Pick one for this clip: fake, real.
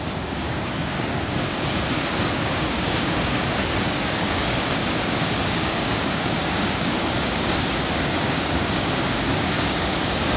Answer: fake